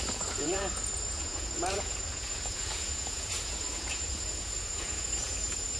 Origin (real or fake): fake